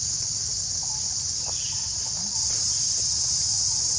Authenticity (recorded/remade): recorded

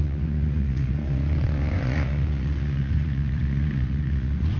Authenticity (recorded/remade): remade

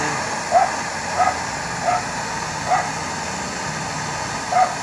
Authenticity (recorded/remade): recorded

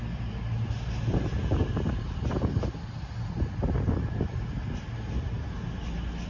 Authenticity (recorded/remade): recorded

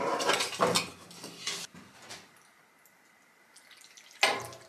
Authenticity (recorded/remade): recorded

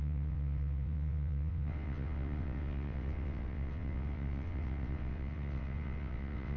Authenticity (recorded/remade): remade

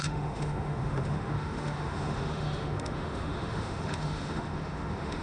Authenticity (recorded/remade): remade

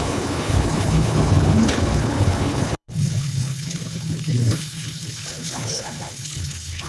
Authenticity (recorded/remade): remade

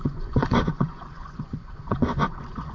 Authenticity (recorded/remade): remade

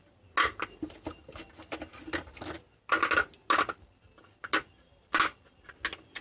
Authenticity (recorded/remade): recorded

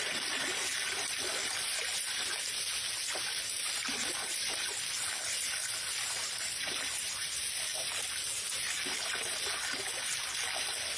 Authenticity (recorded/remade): recorded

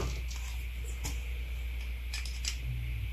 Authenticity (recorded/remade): recorded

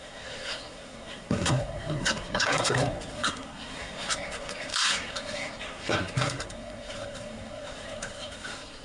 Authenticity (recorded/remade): remade